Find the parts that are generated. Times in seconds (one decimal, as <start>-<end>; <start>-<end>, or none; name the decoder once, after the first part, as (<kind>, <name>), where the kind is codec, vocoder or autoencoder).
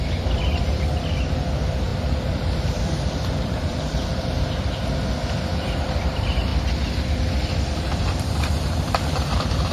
0.0-6.5 (vocoder, BigVGAN v2); 7.1-9.7